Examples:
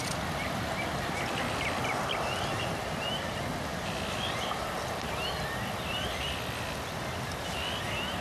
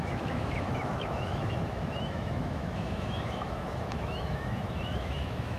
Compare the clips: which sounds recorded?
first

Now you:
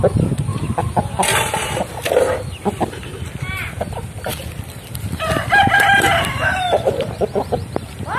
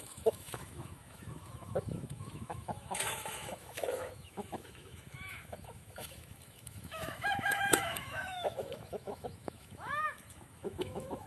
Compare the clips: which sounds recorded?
first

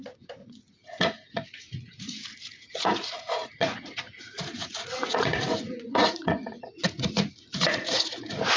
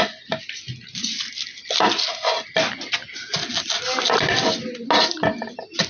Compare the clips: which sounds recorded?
second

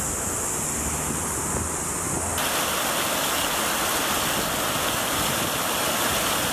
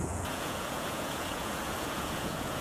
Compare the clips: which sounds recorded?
first